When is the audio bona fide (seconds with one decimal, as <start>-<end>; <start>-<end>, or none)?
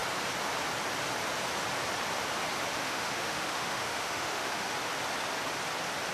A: 0.0-2.7; 4.7-6.1